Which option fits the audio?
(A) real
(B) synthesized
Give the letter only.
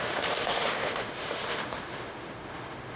B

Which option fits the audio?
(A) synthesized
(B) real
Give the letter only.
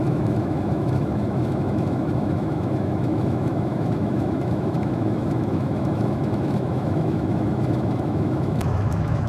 A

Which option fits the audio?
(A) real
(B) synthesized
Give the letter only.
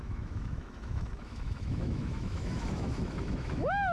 B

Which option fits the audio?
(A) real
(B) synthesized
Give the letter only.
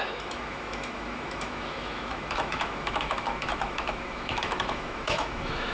B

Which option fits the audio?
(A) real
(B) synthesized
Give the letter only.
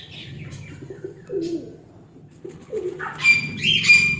A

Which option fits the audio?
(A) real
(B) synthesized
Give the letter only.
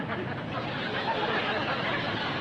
A